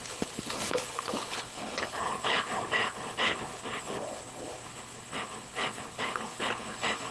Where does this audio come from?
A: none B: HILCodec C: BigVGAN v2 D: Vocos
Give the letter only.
B